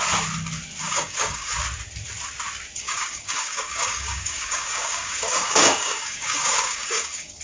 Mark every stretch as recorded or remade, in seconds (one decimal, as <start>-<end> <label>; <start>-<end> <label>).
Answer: 0.0-0.8 recorded; 0.8-1.5 remade; 1.5-2.8 recorded; 2.8-7.4 remade